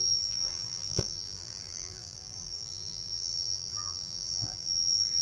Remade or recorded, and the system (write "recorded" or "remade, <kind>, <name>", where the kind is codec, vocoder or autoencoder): remade, vocoder, BigVGAN v2